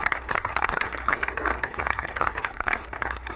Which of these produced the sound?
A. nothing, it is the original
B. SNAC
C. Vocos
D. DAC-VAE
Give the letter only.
B